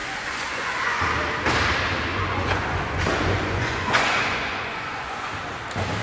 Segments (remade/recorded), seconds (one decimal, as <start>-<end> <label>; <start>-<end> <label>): 0.0-1.0 remade; 1.0-2.1 recorded; 2.1-5.3 remade; 5.3-6.0 recorded